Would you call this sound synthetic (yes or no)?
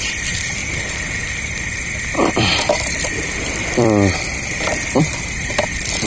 yes